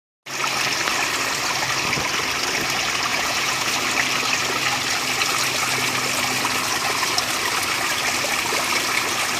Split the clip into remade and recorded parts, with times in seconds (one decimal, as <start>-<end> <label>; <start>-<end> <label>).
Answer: 0.0-3.1 recorded; 3.1-3.7 remade; 3.7-9.4 recorded